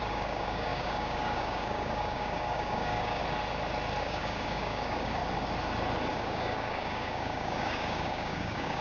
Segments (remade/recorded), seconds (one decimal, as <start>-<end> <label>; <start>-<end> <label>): 0.0-3.2 remade; 3.2-4.0 recorded; 4.0-5.2 remade; 5.2-6.1 recorded; 6.1-8.8 remade